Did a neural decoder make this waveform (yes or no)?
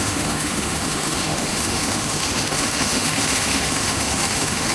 yes